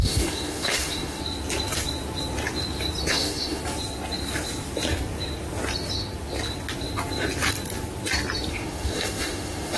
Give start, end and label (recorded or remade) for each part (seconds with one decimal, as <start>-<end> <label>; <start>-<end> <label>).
0.0-1.2 remade; 1.2-3.1 recorded; 3.1-3.6 remade; 3.6-8.5 recorded; 8.5-9.8 remade